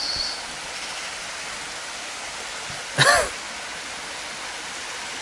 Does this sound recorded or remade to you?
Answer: recorded